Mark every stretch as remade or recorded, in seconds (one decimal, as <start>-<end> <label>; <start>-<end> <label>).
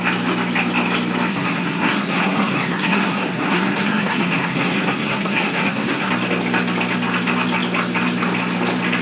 0.0-1.3 recorded; 1.3-6.1 remade; 6.1-9.0 recorded